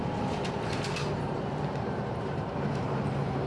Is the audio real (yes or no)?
no